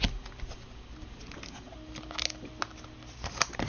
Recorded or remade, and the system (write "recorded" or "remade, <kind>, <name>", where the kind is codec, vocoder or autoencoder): recorded